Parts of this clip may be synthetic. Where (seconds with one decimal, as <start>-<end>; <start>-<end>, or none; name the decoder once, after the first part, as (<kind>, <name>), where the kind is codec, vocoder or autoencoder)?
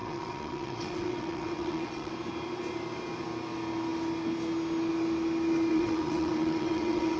0.0-2.1 (vocoder, WaveNeXt); 5.7-7.2